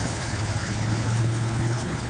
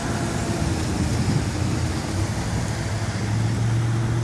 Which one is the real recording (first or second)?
second